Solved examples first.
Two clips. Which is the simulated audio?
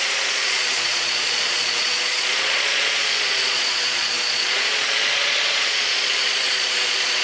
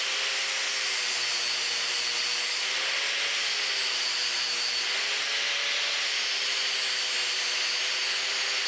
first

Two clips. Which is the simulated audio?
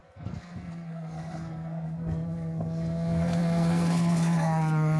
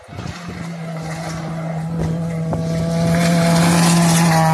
first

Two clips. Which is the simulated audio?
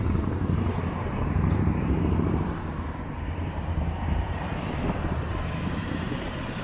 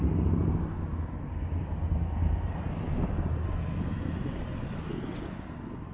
first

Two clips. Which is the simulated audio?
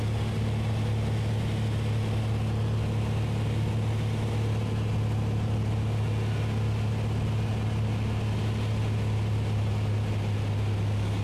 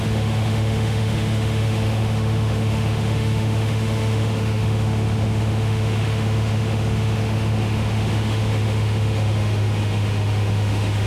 second